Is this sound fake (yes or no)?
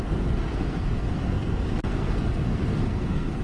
yes